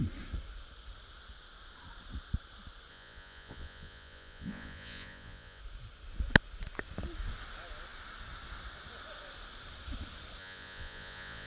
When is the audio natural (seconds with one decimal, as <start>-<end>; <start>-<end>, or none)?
0.0-2.9; 5.6-10.4